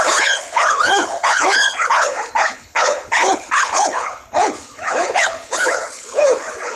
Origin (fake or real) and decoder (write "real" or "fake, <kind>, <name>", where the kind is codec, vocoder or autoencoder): fake, codec, HILCodec